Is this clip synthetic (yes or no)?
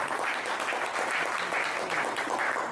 no